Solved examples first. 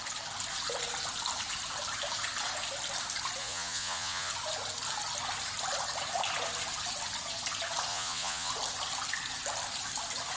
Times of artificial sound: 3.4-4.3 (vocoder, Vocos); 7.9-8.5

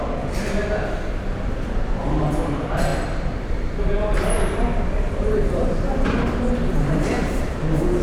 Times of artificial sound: 0.0-2.9 (vocoder, BigVGAN v2); 3.8-8.0

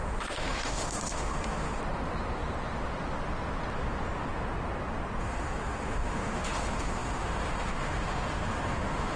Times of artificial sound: 0.0-1.8 (autoencoder, DAC-VAE); 5.2-9.2

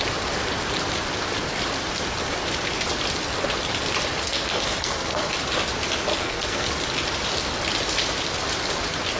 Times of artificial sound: 4.2-5.3 (codec, SNAC); 6.1-6.7

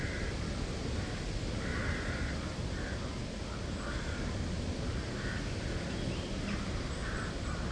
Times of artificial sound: none

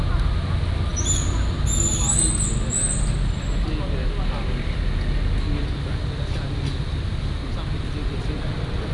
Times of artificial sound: none